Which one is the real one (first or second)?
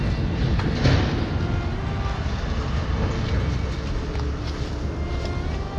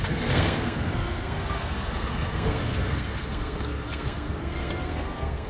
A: first